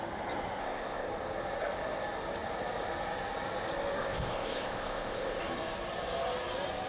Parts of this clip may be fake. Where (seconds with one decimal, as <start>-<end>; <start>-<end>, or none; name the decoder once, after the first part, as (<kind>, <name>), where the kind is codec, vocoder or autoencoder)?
0.6-1.1 (codec, ZipCodec); 4.0-5.4